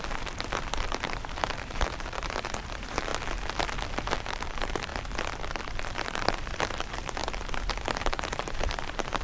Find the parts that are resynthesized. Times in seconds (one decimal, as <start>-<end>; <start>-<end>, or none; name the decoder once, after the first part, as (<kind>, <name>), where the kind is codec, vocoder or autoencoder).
0.0-3.1 (vocoder, BigVGAN v2); 4.1-4.9; 5.9-7.2; 7.9-9.2